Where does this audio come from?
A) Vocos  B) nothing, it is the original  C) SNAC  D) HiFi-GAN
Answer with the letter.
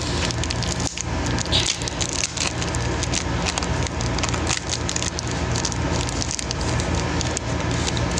B